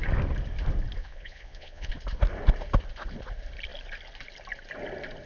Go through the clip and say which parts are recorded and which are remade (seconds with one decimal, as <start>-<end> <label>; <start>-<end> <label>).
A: 0.0-1.0 recorded; 1.0-1.9 remade; 1.9-5.3 recorded